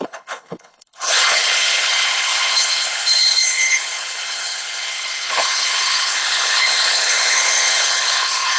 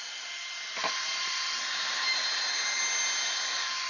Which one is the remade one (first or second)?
first